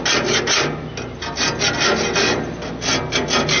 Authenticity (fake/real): real